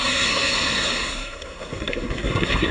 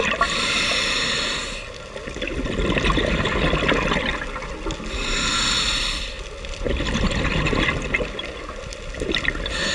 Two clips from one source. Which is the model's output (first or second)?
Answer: first